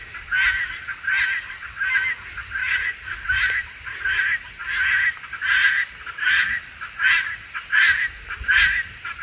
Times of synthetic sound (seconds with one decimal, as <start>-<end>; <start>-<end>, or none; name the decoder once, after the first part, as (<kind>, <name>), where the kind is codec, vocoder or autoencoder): 2.6-3.1 (vocoder, Vocos)